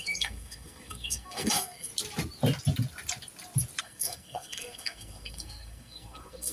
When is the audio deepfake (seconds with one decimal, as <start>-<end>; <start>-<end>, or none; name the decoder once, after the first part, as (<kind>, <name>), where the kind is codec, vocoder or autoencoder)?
0.0-1.9 (codec, SNAC); 3.8-6.5